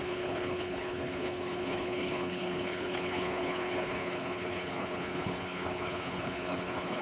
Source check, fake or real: fake